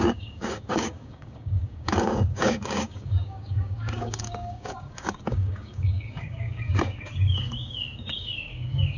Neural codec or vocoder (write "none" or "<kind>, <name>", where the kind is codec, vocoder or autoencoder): codec, DAC